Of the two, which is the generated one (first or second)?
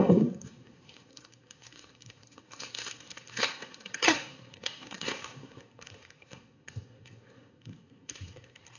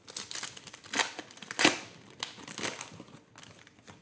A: first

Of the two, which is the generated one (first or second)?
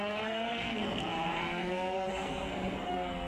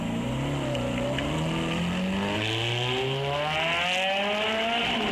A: first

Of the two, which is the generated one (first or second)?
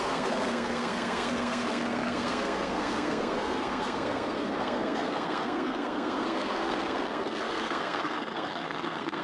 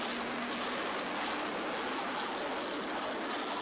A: first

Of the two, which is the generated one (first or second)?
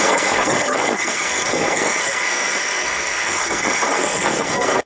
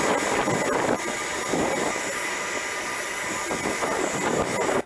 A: first